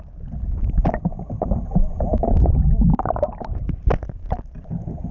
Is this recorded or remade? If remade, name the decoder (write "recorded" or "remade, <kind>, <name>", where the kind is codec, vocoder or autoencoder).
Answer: recorded